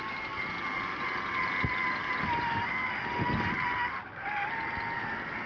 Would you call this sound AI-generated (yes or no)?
no